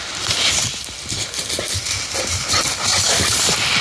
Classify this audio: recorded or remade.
recorded